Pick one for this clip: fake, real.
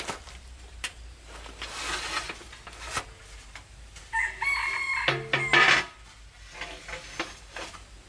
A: real